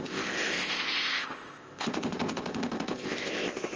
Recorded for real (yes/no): no